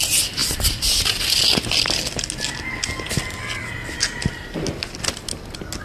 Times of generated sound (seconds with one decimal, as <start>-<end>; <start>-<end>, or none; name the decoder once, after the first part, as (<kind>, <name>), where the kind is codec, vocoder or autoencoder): none